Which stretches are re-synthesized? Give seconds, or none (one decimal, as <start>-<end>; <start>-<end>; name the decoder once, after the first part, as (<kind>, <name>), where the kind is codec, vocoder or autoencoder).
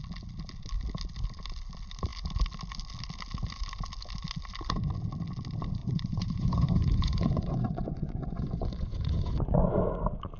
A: 5.8-9.9 (vocoder, Vocos)